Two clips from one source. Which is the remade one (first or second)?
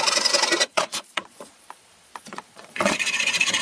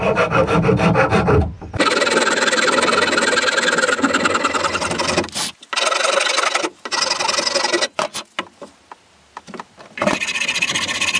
first